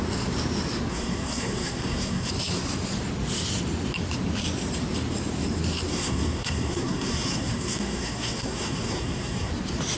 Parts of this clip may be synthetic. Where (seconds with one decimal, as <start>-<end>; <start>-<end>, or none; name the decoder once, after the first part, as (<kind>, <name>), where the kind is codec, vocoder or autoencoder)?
0.9-2.3 (codec, SNAC); 5.9-9.5